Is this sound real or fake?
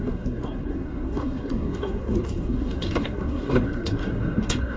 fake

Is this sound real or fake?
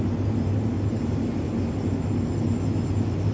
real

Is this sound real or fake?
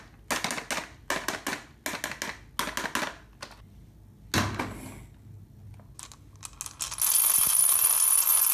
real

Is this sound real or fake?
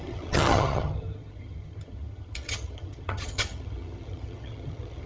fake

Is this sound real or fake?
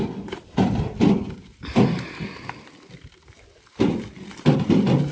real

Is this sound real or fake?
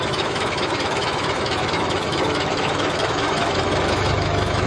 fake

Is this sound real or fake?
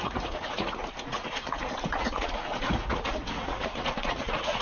fake